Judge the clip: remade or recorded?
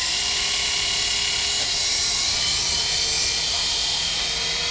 recorded